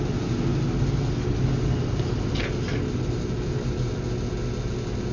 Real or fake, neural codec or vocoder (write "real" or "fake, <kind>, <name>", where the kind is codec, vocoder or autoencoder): real